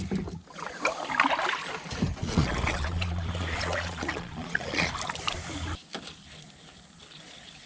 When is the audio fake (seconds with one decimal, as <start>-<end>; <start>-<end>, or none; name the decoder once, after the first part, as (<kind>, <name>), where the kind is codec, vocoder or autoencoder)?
2.2-4.9 (vocoder, Vocos)

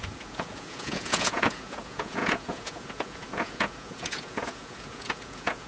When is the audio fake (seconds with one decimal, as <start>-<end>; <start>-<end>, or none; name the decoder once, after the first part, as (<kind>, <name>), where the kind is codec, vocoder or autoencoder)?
0.0-5.7 (vocoder, Vocos)

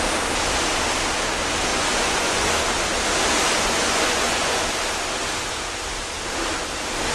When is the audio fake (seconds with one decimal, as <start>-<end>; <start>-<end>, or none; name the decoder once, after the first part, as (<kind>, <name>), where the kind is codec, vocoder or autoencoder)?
1.7-2.5 (vocoder, Vocos); 3.5-4.6